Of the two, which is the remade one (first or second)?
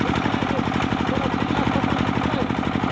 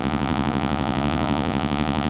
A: second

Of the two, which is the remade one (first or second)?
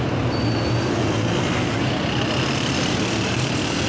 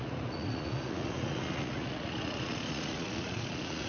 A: second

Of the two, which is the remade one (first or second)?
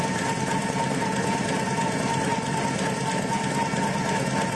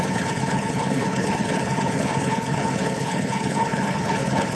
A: second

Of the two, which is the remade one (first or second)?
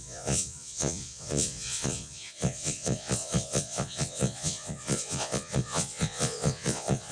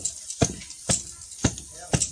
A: first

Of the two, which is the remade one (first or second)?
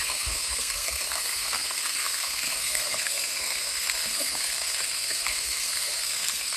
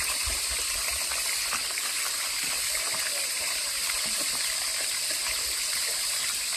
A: first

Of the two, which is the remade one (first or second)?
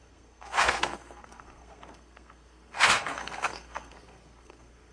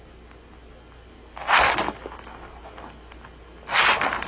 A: first